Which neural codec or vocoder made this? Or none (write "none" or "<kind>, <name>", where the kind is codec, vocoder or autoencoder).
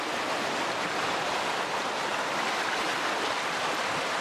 vocoder, BigVGAN v2